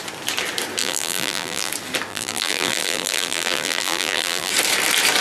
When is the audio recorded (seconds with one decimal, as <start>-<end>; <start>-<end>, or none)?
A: 0.0-0.8; 1.7-2.1; 4.5-5.2